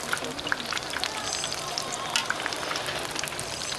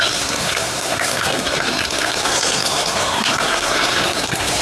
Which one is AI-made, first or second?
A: second